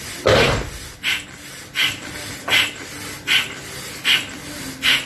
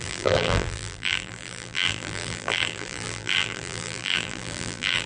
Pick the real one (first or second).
first